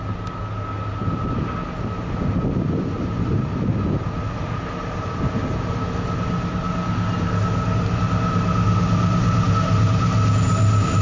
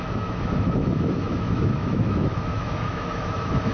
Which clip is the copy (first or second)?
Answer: second